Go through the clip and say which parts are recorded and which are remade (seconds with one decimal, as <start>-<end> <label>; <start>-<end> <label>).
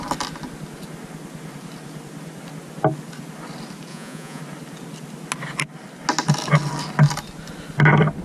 0.0-3.9 recorded; 3.9-4.4 remade; 4.4-8.2 recorded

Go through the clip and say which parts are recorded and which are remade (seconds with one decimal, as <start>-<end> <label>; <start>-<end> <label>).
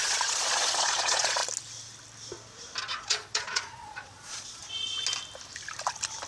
0.0-1.4 remade; 1.4-2.8 recorded; 2.8-4.6 remade; 4.6-6.3 recorded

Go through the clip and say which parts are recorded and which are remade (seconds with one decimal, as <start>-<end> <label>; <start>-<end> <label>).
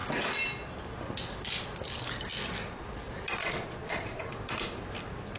0.0-3.4 recorded; 3.4-4.4 remade; 4.4-5.4 recorded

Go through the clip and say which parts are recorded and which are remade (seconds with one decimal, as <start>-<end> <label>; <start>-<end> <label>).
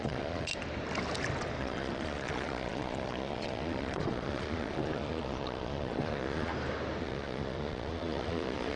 0.0-0.5 remade; 0.5-1.6 recorded; 1.6-6.5 remade; 6.5-7.0 recorded; 7.0-8.8 remade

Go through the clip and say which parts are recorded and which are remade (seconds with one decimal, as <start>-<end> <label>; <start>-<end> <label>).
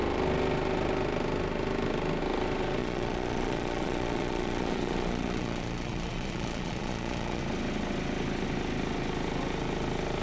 0.0-2.8 recorded; 2.8-7.4 remade; 7.4-10.2 recorded